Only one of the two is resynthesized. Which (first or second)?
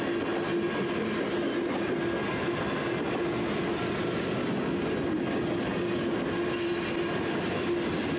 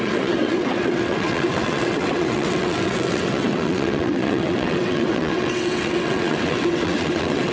second